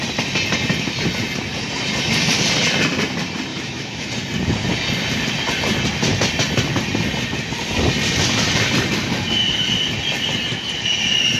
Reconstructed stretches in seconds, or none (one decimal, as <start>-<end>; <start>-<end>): 3.5-4.1